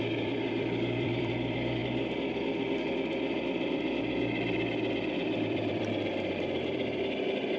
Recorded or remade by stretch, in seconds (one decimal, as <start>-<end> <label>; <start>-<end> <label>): 0.0-1.8 remade; 1.8-5.1 recorded; 5.1-7.6 remade